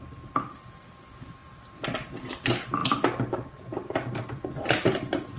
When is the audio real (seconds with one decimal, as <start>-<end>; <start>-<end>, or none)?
1.4-2.2; 2.8-3.6